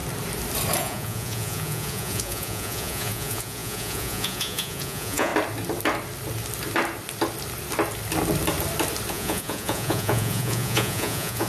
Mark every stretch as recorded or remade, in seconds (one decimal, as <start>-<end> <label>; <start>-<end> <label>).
0.0-0.8 recorded; 0.8-5.3 remade; 5.3-9.1 recorded; 9.1-11.5 remade